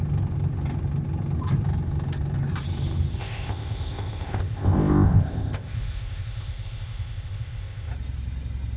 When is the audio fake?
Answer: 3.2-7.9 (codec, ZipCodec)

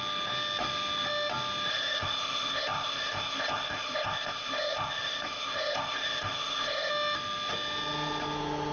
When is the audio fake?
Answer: 1.7-6.9 (codec, ZipCodec)